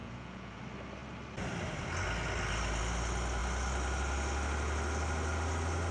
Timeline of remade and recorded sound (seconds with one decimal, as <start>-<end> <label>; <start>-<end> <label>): 0.0-0.6 remade; 0.6-5.9 recorded